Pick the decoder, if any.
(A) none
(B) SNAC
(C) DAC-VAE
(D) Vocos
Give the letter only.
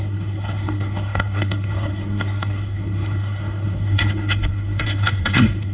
B